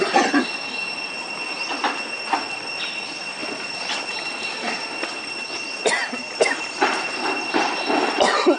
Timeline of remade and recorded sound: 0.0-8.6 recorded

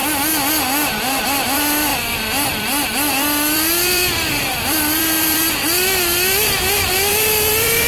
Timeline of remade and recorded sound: 0.0-1.2 recorded; 1.2-7.9 remade